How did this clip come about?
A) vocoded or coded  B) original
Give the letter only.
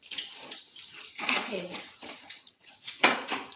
A